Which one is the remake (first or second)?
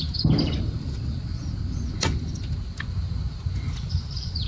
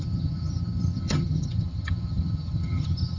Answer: second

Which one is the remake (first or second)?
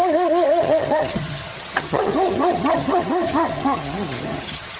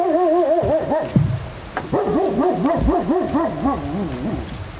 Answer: first